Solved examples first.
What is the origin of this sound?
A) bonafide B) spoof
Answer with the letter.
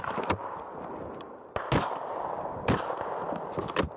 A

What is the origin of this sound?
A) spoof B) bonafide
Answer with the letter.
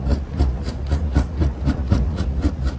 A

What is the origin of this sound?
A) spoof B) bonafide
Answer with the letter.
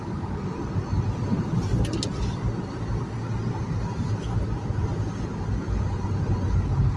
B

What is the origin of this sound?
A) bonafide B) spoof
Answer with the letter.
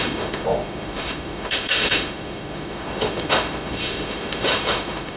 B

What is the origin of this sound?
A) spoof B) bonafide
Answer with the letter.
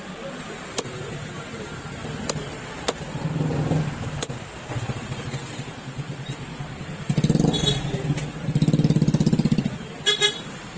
B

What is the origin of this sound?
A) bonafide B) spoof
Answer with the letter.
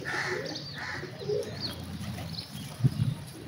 A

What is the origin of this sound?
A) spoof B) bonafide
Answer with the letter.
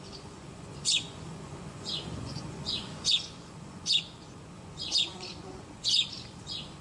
A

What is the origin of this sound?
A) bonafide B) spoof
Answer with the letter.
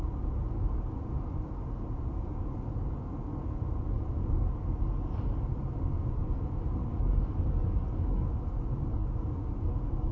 A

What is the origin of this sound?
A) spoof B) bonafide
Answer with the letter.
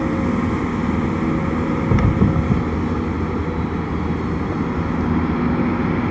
B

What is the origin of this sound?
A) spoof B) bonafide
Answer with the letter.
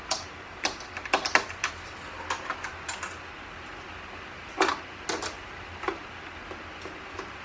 B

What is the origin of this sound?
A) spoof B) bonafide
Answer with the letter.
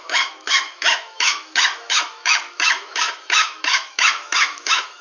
A